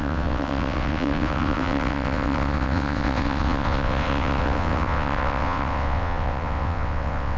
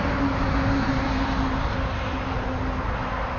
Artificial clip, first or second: first